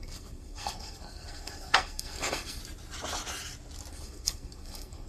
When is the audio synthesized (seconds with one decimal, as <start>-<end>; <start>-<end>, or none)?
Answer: 0.0-2.6; 3.9-5.1